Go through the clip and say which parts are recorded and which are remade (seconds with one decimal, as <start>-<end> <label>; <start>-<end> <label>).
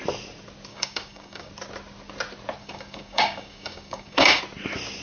0.0-0.7 recorded; 0.7-1.5 remade; 1.5-2.6 recorded; 2.6-4.4 remade; 4.4-5.0 recorded